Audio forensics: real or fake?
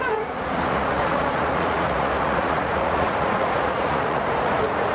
fake